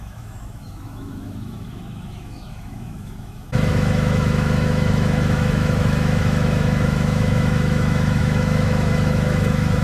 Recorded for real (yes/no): no